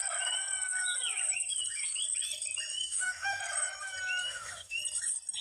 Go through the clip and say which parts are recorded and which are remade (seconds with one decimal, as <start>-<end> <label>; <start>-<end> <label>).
0.0-2.7 recorded; 2.7-3.4 remade; 3.4-4.2 recorded; 4.2-4.8 remade; 4.8-5.4 recorded